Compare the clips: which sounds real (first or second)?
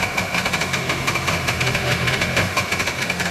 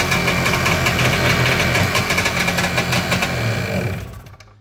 second